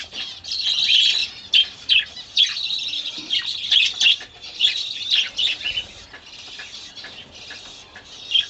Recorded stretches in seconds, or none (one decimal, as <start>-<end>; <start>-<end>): 0.0-1.2; 1.9-8.5

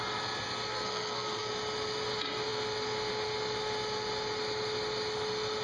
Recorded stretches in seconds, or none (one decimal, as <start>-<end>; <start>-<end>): 0.0-0.7; 1.5-5.6